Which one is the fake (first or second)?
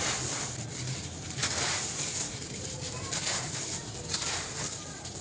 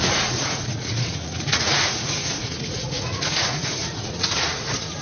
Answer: second